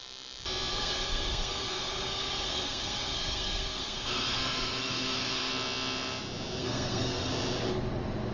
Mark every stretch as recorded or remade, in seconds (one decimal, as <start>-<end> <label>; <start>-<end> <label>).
0.0-0.7 recorded; 0.7-5.5 remade; 5.5-6.6 recorded; 6.6-7.3 remade; 7.3-8.3 recorded